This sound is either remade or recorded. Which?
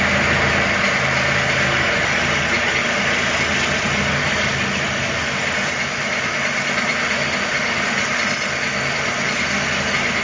recorded